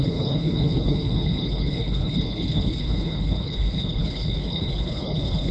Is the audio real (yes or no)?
no